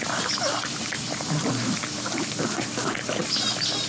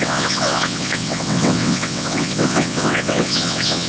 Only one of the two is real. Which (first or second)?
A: first